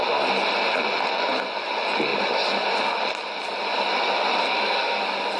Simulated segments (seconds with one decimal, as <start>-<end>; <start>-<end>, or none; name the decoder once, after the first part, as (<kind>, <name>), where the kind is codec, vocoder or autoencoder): 4.4-5.0 (codec, SNAC)